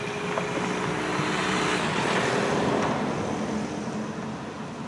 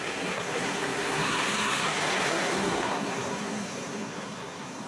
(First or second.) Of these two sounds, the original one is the first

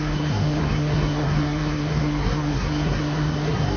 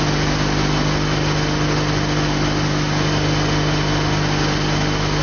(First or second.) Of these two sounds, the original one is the second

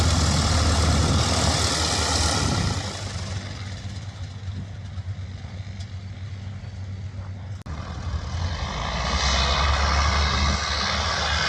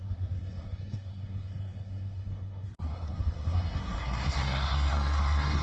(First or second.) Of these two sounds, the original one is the first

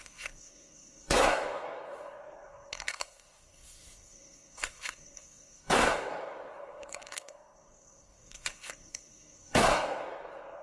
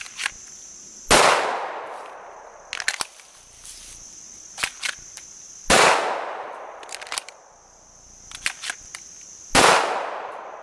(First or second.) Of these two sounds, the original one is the second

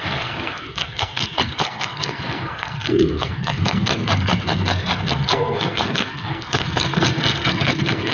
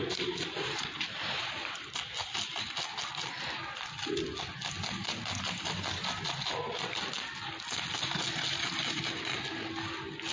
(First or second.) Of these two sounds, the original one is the second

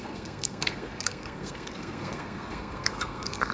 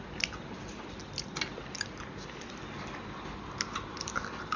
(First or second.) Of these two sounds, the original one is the second